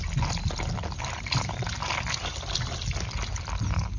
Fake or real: real